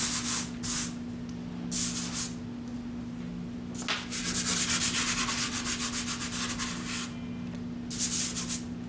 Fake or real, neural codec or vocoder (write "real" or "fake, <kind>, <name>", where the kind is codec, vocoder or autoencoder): real